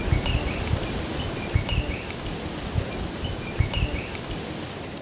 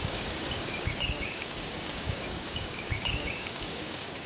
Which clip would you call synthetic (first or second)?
second